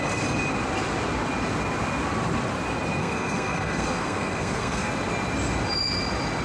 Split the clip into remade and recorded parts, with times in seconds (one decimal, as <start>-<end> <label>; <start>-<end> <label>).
0.0-3.0 recorded; 3.0-4.9 remade; 4.9-6.4 recorded